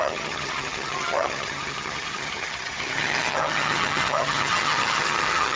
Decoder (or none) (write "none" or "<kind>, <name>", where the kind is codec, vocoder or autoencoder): vocoder, HiFi-GAN